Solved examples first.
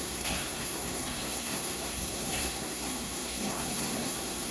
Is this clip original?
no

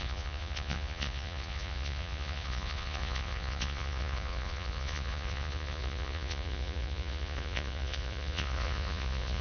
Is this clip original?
no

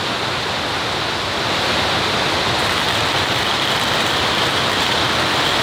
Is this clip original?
yes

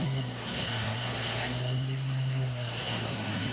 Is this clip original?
no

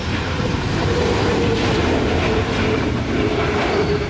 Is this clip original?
no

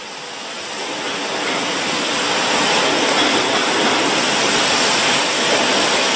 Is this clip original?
yes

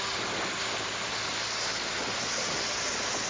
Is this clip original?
yes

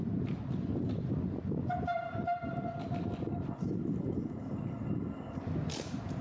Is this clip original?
yes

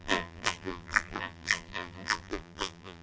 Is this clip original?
no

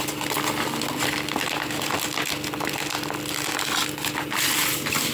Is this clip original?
yes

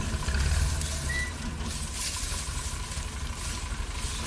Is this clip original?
yes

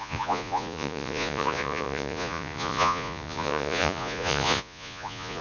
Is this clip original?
no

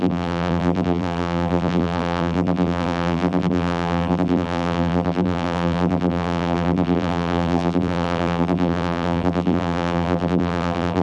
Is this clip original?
no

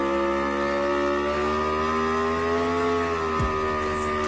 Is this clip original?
yes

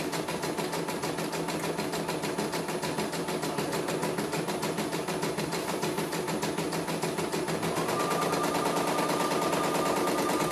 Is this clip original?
yes